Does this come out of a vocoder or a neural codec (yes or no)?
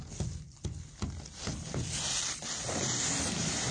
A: no